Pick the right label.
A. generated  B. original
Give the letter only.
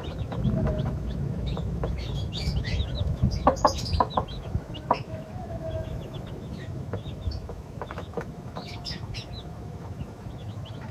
A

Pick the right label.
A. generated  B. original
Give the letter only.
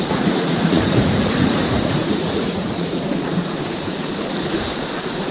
A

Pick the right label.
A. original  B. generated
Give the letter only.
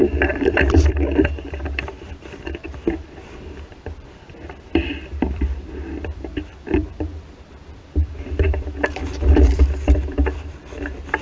B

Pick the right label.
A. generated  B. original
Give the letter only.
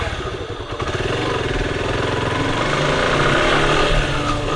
B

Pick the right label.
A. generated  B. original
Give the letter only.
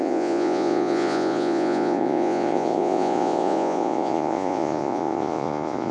A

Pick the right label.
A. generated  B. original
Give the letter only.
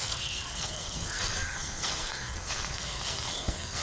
A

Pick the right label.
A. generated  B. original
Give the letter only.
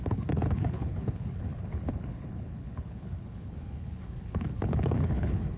A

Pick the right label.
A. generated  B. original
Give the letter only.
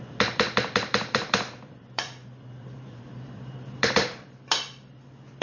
A